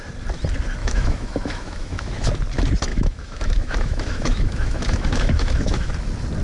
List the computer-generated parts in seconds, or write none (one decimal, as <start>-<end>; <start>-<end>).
0.8-2.3; 2.9-5.9